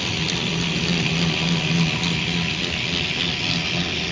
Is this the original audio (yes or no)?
yes